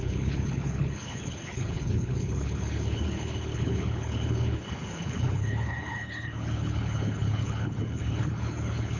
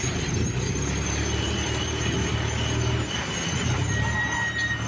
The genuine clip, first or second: second